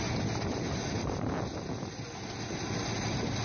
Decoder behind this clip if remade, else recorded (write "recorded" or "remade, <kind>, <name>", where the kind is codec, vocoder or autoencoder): recorded